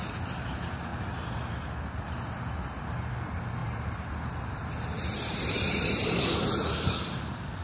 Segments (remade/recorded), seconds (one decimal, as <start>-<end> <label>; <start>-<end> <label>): 0.0-3.6 recorded; 3.6-5.8 remade; 5.8-7.6 recorded